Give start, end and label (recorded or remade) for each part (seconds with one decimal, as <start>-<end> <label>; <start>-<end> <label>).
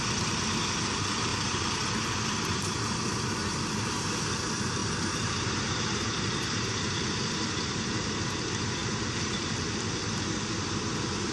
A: 0.0-1.3 recorded; 1.3-2.1 remade; 2.1-4.8 recorded; 4.8-8.1 remade; 8.1-11.3 recorded